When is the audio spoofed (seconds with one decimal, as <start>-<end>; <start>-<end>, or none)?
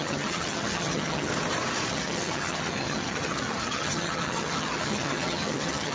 0.0-1.3; 1.9-5.9